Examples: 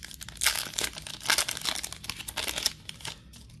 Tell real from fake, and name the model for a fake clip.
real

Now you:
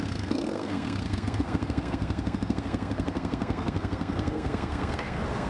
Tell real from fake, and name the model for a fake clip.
fake, codec, SNAC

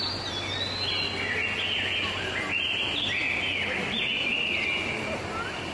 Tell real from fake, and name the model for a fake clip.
real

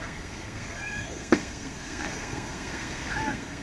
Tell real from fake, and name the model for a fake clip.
fake, codec, SNAC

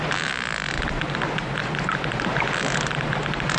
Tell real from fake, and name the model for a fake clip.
real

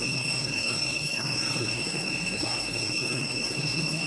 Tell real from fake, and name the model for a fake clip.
fake, codec, SNAC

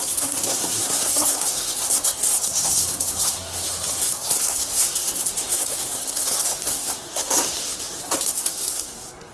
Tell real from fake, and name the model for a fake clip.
fake, codec, SNAC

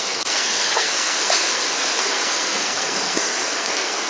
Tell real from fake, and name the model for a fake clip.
fake, codec, SNAC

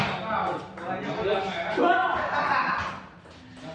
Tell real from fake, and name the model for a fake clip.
real